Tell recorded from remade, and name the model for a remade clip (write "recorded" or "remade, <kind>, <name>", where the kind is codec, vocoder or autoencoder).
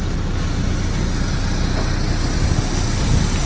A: recorded